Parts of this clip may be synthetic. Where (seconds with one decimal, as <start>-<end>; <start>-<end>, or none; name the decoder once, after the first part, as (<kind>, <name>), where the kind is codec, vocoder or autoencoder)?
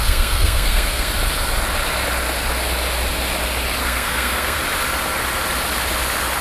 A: 0.0-1.1 (codec, SNAC); 3.8-4.6